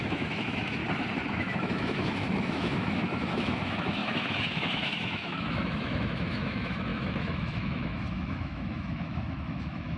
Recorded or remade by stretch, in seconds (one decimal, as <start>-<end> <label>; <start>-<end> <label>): 0.0-0.8 remade; 0.8-1.3 recorded; 1.3-10.0 remade

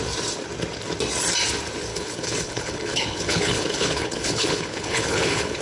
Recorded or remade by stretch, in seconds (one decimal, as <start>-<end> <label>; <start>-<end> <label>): 0.0-1.9 recorded; 1.9-5.6 remade

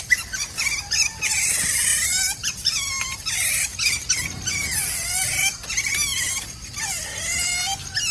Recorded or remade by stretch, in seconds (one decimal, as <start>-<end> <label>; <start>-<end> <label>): 0.0-8.1 recorded

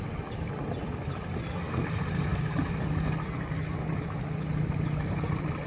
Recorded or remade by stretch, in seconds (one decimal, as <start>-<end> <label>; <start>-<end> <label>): 0.0-5.7 recorded

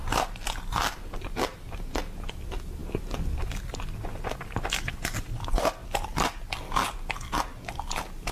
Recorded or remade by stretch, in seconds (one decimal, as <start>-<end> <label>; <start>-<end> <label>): 0.0-8.3 recorded

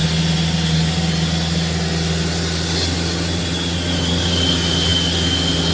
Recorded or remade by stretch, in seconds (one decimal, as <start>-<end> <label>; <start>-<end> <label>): 0.0-5.7 recorded

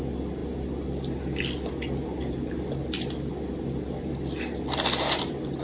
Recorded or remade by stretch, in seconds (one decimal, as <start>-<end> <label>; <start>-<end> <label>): 0.0-5.6 recorded